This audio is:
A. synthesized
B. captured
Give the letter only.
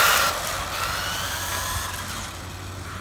B